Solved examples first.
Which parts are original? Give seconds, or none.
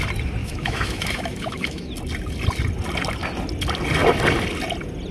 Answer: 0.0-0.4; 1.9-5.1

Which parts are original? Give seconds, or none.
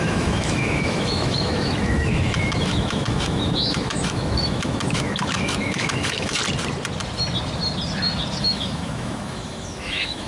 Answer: 6.4-8.4